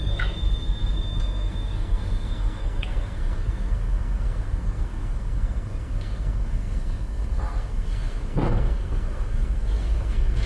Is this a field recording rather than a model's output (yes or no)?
no